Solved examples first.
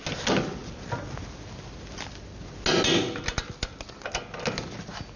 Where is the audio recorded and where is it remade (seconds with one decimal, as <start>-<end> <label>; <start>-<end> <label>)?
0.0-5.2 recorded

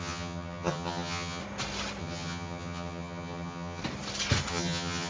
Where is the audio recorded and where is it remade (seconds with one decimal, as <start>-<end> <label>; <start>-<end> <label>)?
0.0-1.4 remade; 1.4-2.0 recorded; 2.0-3.8 remade; 3.8-4.5 recorded; 4.5-5.1 remade

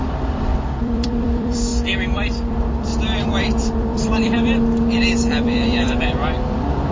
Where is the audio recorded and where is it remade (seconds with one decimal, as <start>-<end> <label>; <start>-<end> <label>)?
0.0-6.9 remade

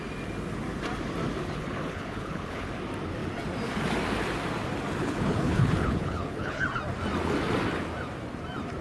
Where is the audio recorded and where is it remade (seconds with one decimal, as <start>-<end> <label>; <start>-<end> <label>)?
0.0-1.4 recorded; 1.4-2.7 remade; 2.7-5.0 recorded; 5.0-6.6 remade; 6.6-8.8 recorded

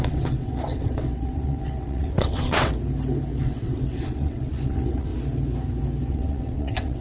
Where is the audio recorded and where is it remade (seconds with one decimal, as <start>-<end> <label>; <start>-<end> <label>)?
0.0-2.7 remade; 2.7-3.4 recorded; 3.4-5.1 remade; 5.1-6.1 recorded; 6.1-7.0 remade

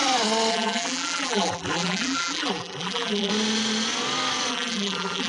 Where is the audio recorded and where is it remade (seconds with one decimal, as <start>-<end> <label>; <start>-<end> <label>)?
0.0-0.5 recorded; 0.5-3.3 remade; 3.3-4.5 recorded; 4.5-5.3 remade

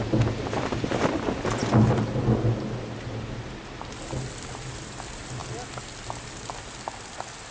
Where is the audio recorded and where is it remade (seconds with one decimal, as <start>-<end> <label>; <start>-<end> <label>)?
0.0-7.5 recorded

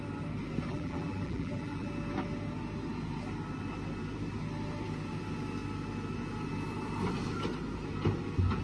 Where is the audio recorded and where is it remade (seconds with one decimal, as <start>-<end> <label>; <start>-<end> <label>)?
0.0-0.7 recorded; 0.7-1.9 remade; 1.9-8.6 recorded